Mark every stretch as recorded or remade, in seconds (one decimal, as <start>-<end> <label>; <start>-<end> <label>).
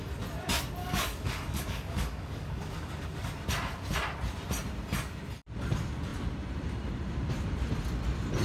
0.0-0.8 recorded; 0.8-3.3 remade; 3.3-8.4 recorded